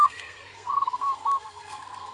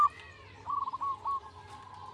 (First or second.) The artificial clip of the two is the first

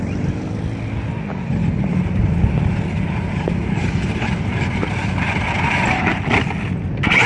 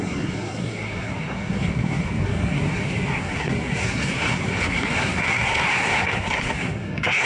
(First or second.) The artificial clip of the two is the second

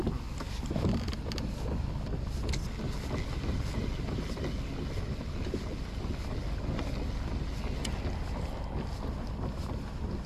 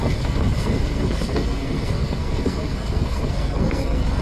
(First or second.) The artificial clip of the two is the second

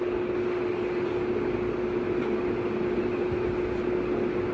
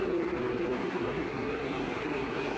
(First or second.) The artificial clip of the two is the second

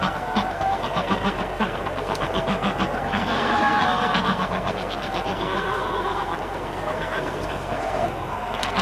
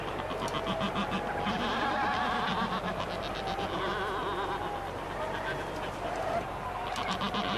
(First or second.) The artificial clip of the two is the first